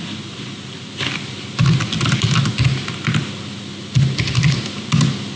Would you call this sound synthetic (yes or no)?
no